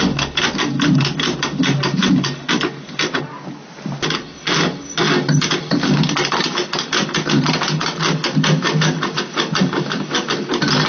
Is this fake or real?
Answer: real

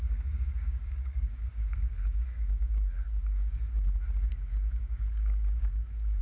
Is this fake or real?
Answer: fake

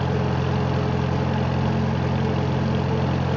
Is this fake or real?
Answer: real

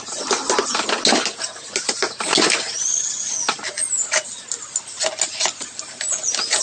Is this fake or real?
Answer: real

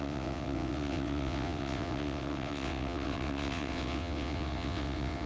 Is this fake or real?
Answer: fake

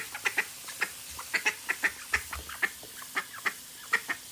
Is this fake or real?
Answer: real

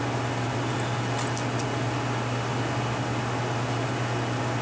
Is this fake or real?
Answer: real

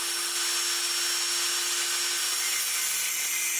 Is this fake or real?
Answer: real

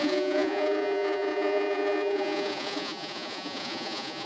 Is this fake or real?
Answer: fake